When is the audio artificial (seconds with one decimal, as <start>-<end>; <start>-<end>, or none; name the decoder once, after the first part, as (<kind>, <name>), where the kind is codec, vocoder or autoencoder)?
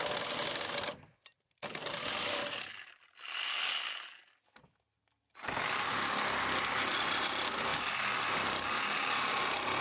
7.7-8.6 (vocoder, BigVGAN v2)